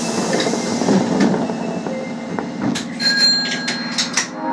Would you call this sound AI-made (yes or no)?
no